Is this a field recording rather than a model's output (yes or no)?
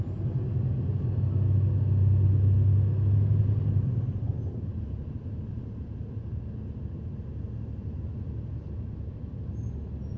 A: yes